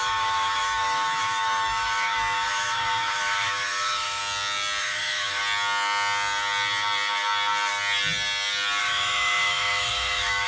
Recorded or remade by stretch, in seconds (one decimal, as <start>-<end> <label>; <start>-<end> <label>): 0.0-4.2 remade; 4.2-4.8 recorded; 4.8-5.4 remade; 5.4-8.8 recorded; 8.8-10.5 remade